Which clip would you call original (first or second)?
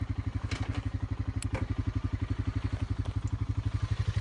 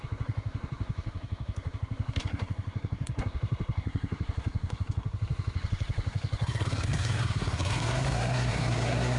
first